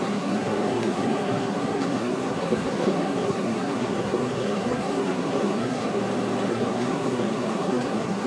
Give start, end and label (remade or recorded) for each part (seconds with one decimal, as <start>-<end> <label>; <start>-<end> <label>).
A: 0.0-6.0 remade; 6.0-6.5 recorded; 6.5-8.3 remade